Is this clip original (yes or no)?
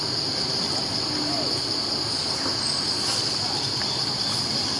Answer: yes